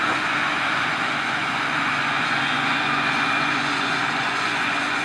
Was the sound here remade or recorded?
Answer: remade